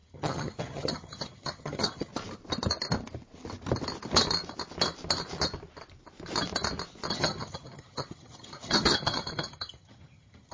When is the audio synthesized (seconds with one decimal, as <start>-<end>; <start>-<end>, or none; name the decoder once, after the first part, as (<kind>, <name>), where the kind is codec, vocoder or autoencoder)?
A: 0.0-2.1 (vocoder, HiFi-GAN); 7.1-10.5